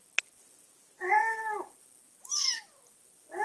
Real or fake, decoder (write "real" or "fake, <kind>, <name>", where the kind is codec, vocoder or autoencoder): real